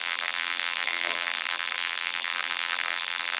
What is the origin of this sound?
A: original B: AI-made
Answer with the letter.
B